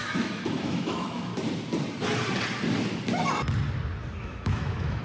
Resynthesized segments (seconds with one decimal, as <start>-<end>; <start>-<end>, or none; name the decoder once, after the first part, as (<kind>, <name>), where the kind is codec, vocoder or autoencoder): 0.0-1.3 (autoencoder, DAC-VAE); 4.2-5.0

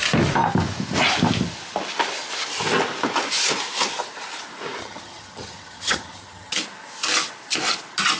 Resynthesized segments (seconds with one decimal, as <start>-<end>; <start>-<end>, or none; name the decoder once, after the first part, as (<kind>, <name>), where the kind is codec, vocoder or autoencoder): 4.8-6.5 (vocoder, HiFi-GAN)

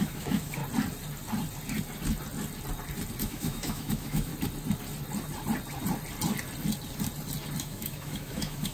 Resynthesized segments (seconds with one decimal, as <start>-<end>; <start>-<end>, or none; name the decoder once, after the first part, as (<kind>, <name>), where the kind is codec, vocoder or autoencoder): 0.0-0.6 (autoencoder, DAC-VAE); 3.2-4.3; 7.6-8.7